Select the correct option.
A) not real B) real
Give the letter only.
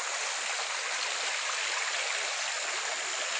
B